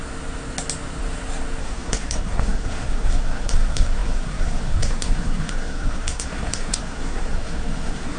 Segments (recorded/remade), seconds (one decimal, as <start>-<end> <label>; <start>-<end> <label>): 0.0-1.6 recorded; 1.6-8.2 remade